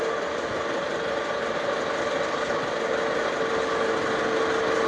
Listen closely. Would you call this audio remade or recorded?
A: recorded